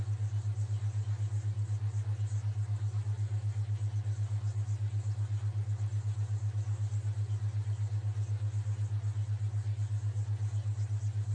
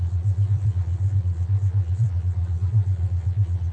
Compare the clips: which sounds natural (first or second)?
first